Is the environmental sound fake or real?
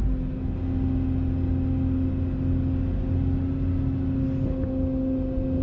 real